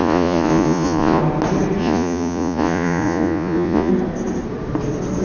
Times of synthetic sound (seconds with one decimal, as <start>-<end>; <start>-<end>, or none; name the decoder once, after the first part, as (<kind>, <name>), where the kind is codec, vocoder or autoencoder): 0.0-1.2 (vocoder, Vocos); 1.8-3.9